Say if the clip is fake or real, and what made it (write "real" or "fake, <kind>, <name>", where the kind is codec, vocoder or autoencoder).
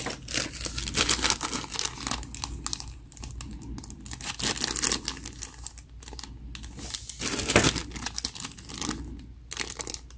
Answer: real